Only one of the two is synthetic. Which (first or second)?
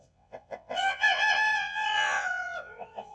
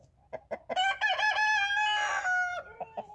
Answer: first